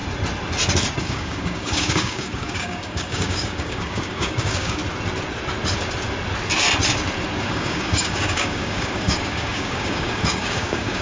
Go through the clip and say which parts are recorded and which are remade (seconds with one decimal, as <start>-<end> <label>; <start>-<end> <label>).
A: 0.0-1.0 recorded; 1.0-4.8 remade; 4.8-7.4 recorded; 7.4-11.0 remade